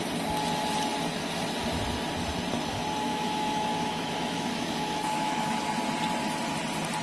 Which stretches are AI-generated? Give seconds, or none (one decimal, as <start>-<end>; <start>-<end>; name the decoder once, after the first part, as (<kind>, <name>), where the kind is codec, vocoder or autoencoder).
3.1-5.7 (autoencoder, DAC-VAE)